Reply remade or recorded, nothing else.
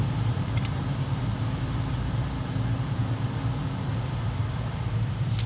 remade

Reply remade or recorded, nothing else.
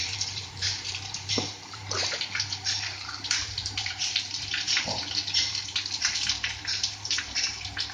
remade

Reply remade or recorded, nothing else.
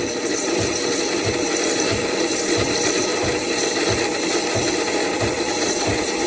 remade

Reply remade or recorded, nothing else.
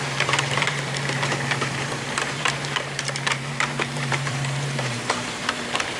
remade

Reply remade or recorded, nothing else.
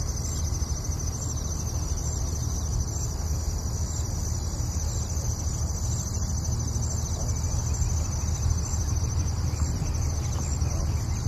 recorded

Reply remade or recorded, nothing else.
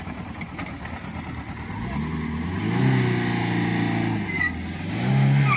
recorded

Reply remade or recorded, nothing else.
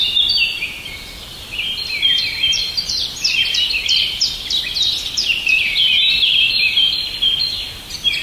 remade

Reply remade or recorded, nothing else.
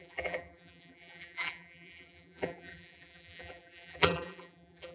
remade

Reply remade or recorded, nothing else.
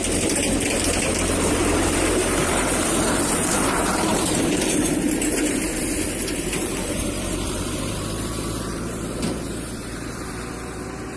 remade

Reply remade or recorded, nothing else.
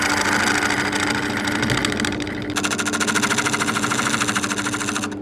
recorded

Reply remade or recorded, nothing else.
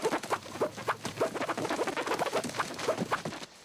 remade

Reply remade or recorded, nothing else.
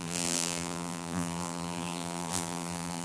remade